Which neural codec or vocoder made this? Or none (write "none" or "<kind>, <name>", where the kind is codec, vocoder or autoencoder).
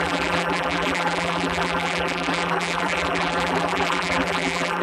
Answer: vocoder, BigVGAN v2